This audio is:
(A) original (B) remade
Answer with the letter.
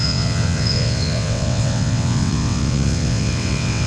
B